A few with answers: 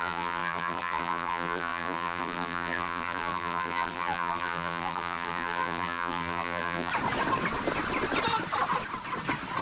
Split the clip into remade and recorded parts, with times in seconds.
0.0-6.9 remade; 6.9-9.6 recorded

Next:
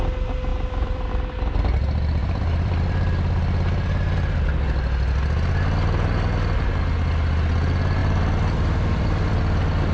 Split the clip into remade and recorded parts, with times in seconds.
0.0-0.5 recorded; 0.5-1.1 remade; 1.1-2.2 recorded; 2.2-4.5 remade; 4.5-8.0 recorded; 8.0-9.4 remade; 9.4-9.9 recorded

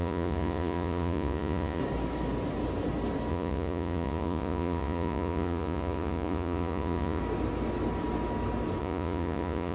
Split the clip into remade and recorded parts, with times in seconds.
0.0-1.8 remade; 1.8-3.3 recorded; 3.3-7.2 remade; 7.2-8.8 recorded; 8.8-9.7 remade

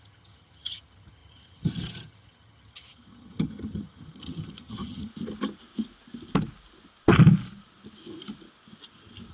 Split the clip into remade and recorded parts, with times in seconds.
0.0-5.1 remade; 5.1-9.3 recorded

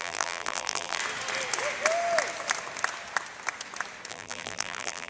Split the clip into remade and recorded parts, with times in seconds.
0.0-1.0 remade; 1.0-4.1 recorded; 4.1-5.1 remade

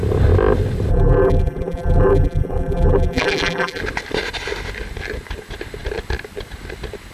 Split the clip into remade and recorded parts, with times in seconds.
0.0-0.9 recorded; 0.9-3.8 remade; 3.8-7.1 recorded

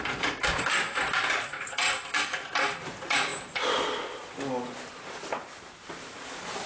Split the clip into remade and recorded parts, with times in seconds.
0.0-3.3 remade; 3.3-4.9 recorded; 4.9-6.7 remade